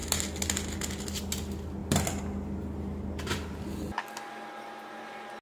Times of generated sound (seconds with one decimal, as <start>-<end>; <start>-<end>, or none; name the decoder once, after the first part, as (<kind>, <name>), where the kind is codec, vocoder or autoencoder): 1.8-5.0 (vocoder, BigVGAN v2)